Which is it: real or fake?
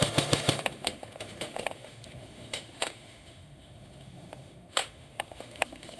fake